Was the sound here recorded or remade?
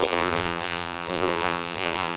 remade